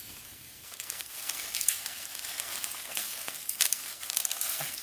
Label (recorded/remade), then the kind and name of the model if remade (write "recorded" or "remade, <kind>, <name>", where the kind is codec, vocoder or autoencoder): remade, codec, SNAC